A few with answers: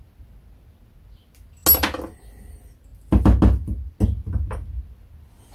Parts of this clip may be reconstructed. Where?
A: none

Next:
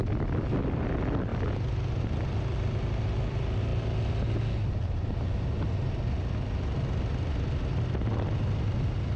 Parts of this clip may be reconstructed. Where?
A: none

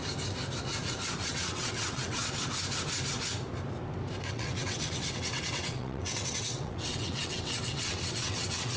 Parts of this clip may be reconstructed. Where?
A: 1.3-2.2 (vocoder, WaveNeXt); 4.3-8.8

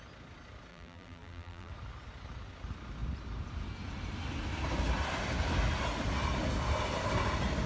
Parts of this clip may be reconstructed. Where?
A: 0.7-1.7 (vocoder, BigVGAN v2)

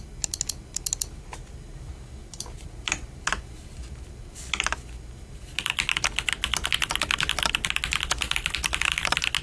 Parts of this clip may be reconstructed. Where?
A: 2.2-4.5 (vocoder, BigVGAN v2)